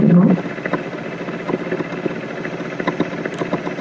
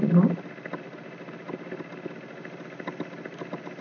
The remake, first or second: first